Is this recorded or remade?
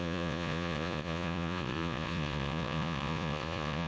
remade